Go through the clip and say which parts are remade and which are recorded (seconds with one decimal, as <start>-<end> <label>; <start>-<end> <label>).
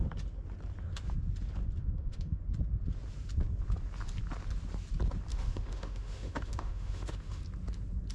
0.0-1.8 recorded; 1.8-2.4 remade; 2.4-5.3 recorded; 5.3-7.4 remade; 7.4-8.1 recorded